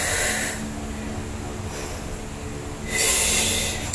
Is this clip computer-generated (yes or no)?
no